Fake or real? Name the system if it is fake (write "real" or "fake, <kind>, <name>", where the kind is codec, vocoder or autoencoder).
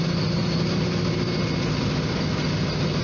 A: real